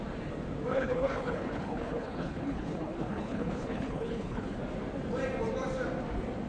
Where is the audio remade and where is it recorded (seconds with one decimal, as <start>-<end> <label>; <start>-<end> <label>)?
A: 0.0-0.7 recorded; 0.7-4.6 remade; 4.6-6.5 recorded